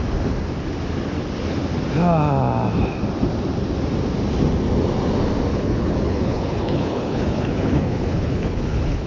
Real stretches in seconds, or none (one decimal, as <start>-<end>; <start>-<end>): 0.0-5.5